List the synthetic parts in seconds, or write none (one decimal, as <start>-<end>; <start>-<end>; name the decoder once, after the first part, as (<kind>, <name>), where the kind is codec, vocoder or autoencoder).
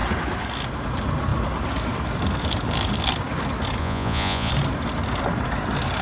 3.8-4.5 (vocoder, Vocos)